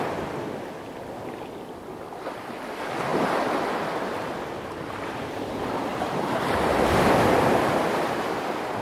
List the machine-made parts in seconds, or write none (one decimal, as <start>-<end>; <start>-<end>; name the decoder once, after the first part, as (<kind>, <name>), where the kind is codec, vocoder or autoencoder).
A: 5.9-7.1 (vocoder, BigVGAN v2)